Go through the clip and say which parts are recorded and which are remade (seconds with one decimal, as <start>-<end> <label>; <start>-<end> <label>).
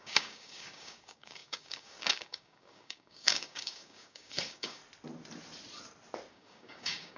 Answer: 0.0-4.8 remade; 4.8-6.3 recorded; 6.3-7.2 remade